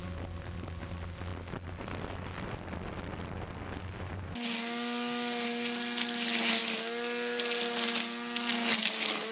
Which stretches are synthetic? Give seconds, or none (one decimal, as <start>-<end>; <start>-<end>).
none